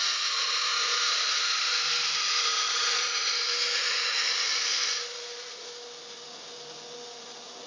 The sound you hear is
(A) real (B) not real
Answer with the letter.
A